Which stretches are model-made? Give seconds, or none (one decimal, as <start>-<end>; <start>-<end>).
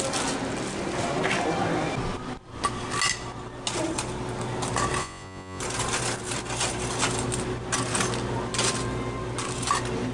5.0-5.6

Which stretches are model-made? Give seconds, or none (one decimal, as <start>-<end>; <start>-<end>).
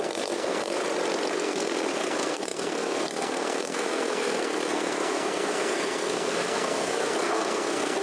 0.0-0.8; 1.3-8.0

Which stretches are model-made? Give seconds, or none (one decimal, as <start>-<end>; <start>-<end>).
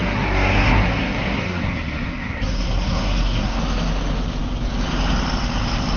0.0-3.6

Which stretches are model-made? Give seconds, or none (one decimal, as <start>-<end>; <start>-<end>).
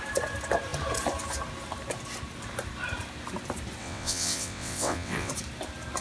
3.8-5.3